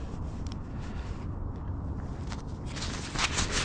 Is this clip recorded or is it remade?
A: recorded